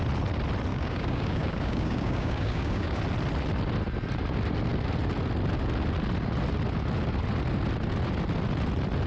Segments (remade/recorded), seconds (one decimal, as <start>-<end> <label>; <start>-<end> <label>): 0.0-0.7 recorded; 0.7-3.0 remade; 3.0-9.1 recorded